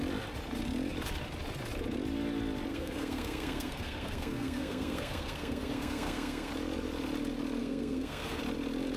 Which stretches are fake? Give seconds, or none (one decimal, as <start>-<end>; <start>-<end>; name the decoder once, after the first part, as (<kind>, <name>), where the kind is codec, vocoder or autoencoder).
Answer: 2.7-6.5 (codec, SNAC); 7.6-8.4